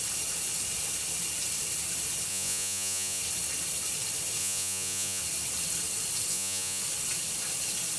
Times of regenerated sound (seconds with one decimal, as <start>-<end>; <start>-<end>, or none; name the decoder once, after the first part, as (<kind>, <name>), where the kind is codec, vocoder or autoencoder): 2.3-3.2 (vocoder, Vocos); 4.4-5.2; 6.3-6.8

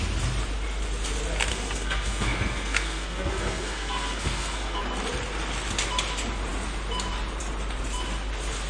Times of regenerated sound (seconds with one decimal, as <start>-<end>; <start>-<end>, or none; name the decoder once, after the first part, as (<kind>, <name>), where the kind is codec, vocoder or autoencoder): 1.5-4.8 (codec, SNAC)

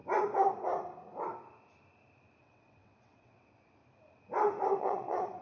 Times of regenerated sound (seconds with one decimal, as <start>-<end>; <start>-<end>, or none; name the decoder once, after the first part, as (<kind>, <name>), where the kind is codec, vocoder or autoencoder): 2.4-3.8 (vocoder, WaveNeXt); 4.8-5.4

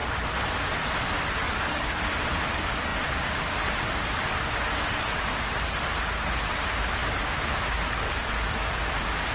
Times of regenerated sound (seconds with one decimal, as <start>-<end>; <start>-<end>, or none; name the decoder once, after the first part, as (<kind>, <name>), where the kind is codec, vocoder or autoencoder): 1.4-2.0 (codec, DAC)